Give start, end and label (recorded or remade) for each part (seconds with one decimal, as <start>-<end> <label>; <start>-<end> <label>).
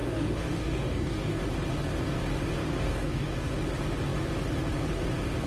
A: 0.0-1.4 remade; 1.4-2.6 recorded; 2.6-3.5 remade; 3.5-5.5 recorded